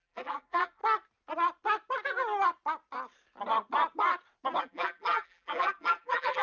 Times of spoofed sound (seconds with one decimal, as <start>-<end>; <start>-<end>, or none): 0.0-0.8; 4.6-6.4